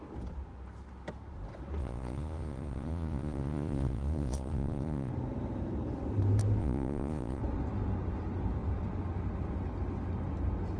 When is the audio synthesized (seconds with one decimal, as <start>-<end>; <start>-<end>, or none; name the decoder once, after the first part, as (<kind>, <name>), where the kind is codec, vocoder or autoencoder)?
1.8-5.1 (vocoder, Vocos); 6.6-7.4